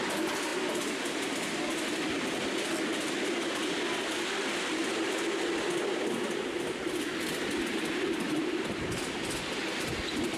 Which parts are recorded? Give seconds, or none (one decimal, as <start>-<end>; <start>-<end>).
0.0-10.4